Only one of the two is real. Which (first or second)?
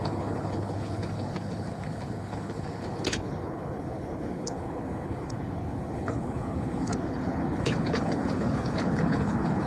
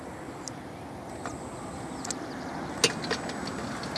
second